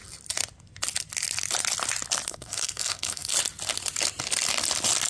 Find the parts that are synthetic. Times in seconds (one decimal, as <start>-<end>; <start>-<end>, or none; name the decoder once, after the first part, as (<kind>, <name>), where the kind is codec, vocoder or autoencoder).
2.3-3.3 (codec, SNAC)